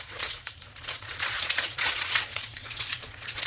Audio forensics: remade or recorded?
remade